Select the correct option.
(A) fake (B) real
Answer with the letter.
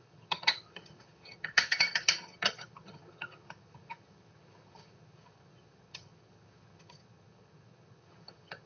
A